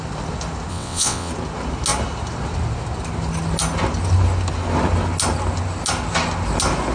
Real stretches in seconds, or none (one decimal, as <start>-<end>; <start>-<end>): 0.0-0.7; 1.3-6.9